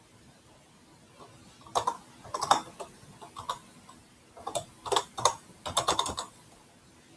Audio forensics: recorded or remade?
recorded